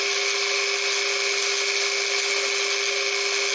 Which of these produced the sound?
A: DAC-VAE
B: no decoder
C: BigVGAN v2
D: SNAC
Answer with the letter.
B